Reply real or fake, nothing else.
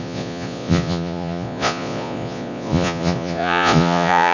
fake